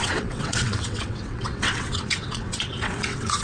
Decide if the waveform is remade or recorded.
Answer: remade